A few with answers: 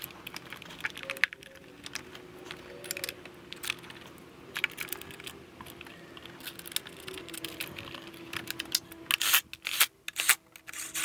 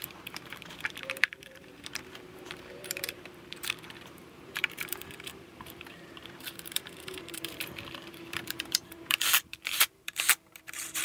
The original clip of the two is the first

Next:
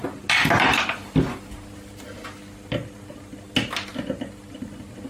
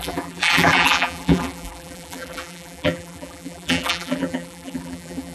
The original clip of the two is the first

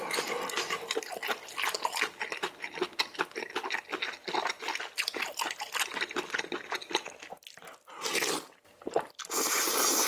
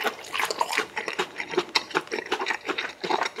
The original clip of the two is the first